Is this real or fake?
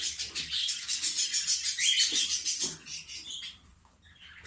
real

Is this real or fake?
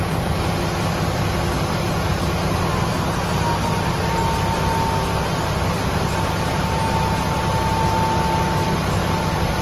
real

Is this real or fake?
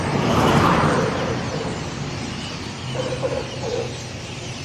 real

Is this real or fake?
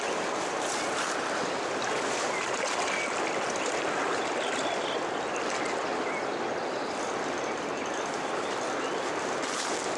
real